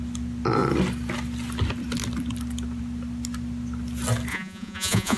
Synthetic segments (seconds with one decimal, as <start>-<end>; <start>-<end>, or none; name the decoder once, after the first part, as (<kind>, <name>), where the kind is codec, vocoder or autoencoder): 4.3-5.2 (vocoder, Vocos)